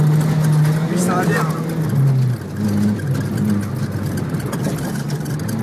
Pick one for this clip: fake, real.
real